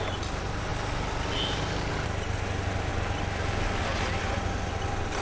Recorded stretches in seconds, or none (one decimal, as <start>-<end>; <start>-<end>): 0.0-5.2